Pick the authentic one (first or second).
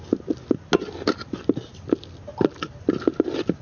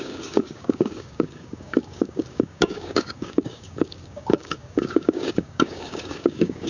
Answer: first